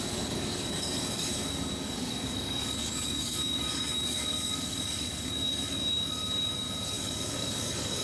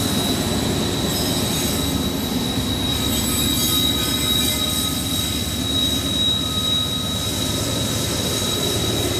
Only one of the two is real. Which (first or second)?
second